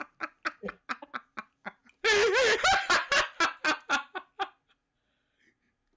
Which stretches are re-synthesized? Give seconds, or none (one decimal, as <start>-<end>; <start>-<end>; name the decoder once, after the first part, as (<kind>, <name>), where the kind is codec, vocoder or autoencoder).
none